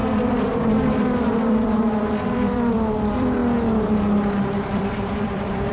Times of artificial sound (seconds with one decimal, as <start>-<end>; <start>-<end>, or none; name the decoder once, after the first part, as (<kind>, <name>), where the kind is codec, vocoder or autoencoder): 0.0-3.4 (vocoder, BigVGAN v2); 4.4-5.7